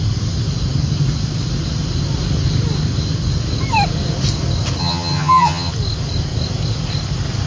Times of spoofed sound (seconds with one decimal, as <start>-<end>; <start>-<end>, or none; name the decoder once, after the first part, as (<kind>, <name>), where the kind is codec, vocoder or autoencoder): 4.8-5.7 (vocoder, HiFi-GAN)